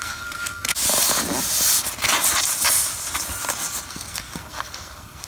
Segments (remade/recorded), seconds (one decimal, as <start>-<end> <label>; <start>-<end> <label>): 0.0-0.7 remade; 0.7-3.9 recorded; 3.9-5.3 remade